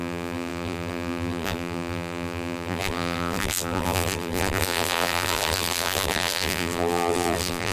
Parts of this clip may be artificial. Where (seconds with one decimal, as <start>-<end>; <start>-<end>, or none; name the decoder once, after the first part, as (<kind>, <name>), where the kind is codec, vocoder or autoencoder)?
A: 0.0-7.7 (vocoder, BigVGAN v2)